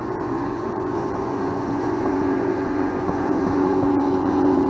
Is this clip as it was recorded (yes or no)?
no